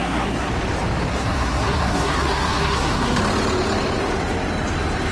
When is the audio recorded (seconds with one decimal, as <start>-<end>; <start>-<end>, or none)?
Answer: 0.5-1.1; 3.2-5.1